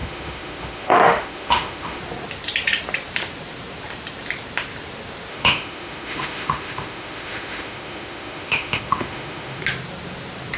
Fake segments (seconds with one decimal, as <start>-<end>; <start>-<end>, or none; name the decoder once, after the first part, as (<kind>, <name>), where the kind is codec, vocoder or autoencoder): 0.0-2.0 (autoencoder, DAC-VAE); 5.3-9.6